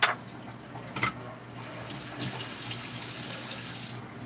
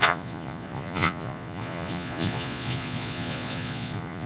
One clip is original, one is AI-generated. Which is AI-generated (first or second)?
second